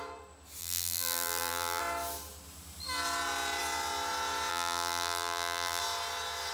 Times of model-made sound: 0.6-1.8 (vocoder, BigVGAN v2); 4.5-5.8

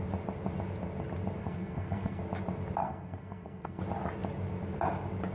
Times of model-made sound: 1.4-2.2 (codec, SNAC); 2.8-3.8

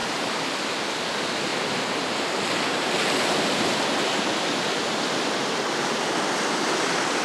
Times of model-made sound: 0.0-0.7 (vocoder, BigVGAN v2); 1.5-3.7

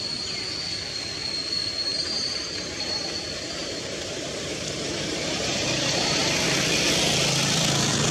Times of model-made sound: 1.9-3.1 (vocoder, BigVGAN v2); 3.6-6.2

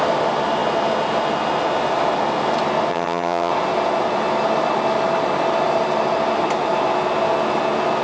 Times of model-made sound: 2.9-3.5 (vocoder, HiFi-GAN)

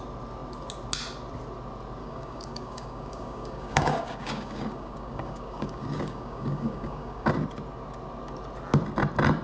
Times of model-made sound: 2.0-7.3 (codec, DAC)

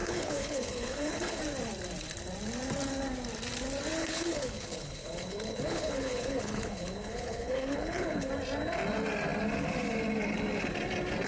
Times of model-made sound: 0.0-1.4 (codec, HILCodec); 4.0-8.3